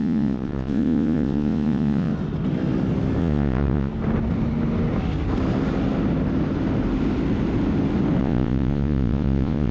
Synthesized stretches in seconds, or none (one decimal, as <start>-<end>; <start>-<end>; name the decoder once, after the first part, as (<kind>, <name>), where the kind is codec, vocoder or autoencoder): 0.0-2.1 (vocoder, Vocos); 3.2-3.9; 8.2-9.7